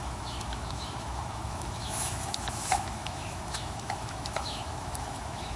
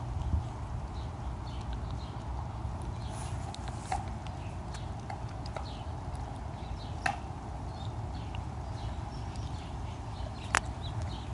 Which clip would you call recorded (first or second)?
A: second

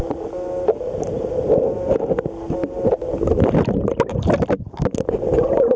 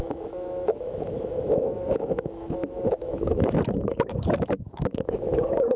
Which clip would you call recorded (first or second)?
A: first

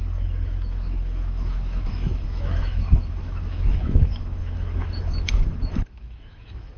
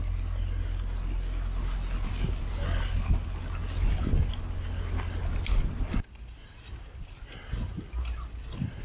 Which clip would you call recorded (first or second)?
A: second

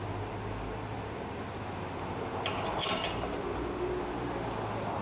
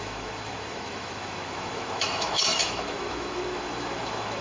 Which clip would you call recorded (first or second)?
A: first